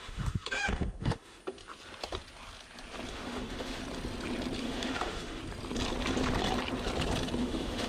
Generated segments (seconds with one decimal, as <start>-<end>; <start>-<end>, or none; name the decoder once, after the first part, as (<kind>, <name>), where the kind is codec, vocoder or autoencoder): 0.0-1.4 (autoencoder, DAC-VAE); 3.1-3.8; 4.6-5.4; 7.4-7.9